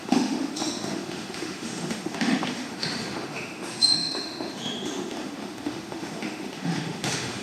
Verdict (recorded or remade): remade